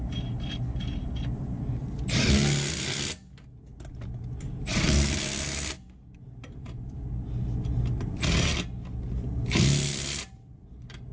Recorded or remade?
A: recorded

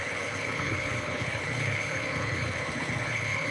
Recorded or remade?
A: remade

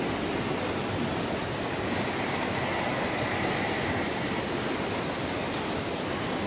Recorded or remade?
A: recorded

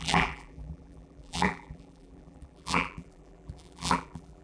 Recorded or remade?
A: remade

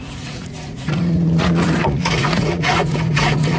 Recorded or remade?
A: remade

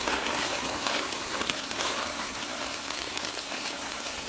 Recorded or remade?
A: remade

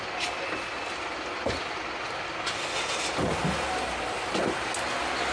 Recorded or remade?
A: recorded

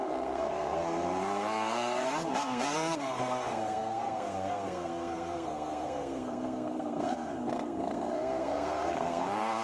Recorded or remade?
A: remade